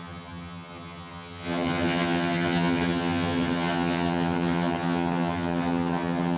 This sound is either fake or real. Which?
fake